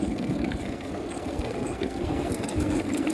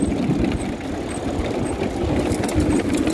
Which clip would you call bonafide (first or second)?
second